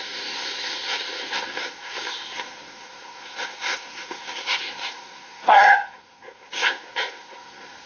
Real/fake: fake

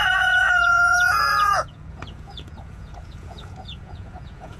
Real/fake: fake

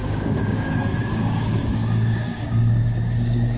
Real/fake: fake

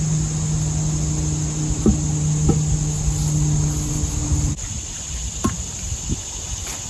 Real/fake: real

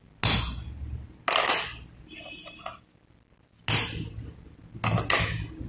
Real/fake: real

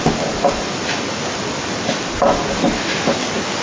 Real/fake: real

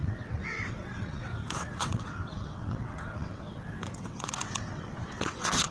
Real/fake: fake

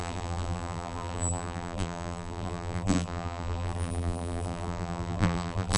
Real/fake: fake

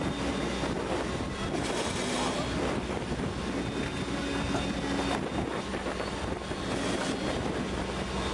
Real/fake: real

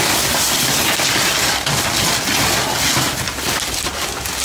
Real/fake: real